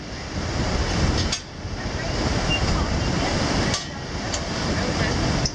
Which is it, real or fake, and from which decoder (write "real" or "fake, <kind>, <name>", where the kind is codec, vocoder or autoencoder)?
real